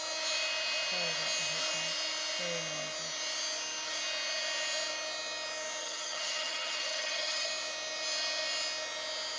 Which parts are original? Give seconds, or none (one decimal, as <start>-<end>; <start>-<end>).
0.0-5.8; 7.5-9.4

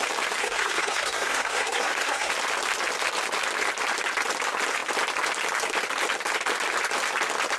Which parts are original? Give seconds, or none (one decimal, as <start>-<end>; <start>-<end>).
0.0-0.4; 2.3-7.6

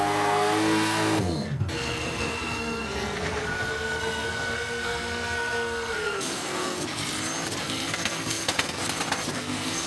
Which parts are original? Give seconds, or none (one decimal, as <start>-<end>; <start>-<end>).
7.0-7.6; 8.8-9.3

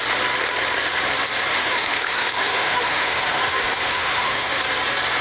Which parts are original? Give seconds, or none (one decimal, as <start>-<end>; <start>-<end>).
0.0-1.5; 4.6-5.2

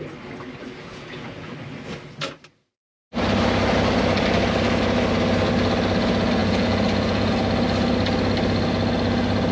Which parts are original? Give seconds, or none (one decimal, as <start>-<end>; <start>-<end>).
0.0-0.6; 1.5-6.4; 7.3-9.5

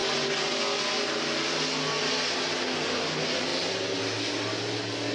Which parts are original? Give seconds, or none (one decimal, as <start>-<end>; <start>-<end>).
0.0-5.1

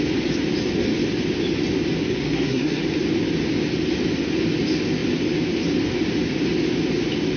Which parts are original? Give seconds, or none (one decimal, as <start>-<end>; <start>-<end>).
0.0-2.1; 2.8-7.4